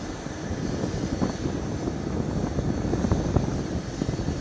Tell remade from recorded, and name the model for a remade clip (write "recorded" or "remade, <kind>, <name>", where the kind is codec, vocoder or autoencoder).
recorded